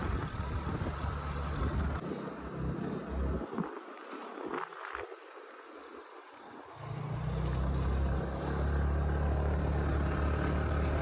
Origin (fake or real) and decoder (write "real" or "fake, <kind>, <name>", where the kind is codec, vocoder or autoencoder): real